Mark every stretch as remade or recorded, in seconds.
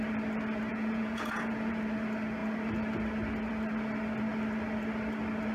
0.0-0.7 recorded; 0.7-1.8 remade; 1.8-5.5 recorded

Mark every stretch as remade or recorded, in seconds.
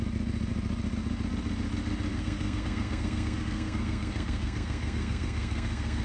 0.0-2.1 recorded; 2.1-6.0 remade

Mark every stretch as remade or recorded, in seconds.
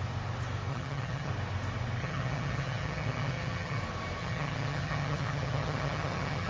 0.0-0.7 recorded; 0.7-1.3 remade; 1.3-2.0 recorded; 2.0-3.8 remade; 3.8-4.2 recorded; 4.2-6.5 remade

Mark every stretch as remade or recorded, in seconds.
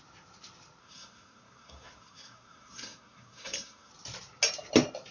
0.0-0.8 recorded; 0.8-3.9 remade; 3.9-5.1 recorded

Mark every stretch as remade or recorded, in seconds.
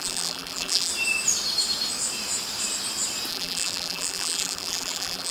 0.0-0.9 remade; 0.9-3.3 recorded; 3.3-5.3 remade